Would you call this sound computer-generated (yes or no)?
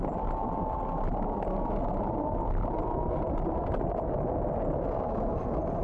no